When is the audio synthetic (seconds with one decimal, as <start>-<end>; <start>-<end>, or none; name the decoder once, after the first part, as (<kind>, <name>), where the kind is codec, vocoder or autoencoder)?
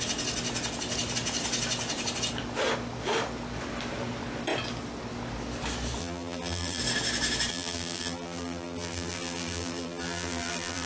6.0-6.8 (vocoder, BigVGAN v2); 7.5-10.9